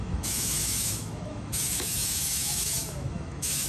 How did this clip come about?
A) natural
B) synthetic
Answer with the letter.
B